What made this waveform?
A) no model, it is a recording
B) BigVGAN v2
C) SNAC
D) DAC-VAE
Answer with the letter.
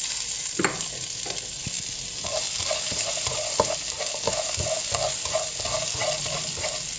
A